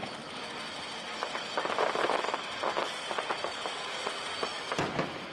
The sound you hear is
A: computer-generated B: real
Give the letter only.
A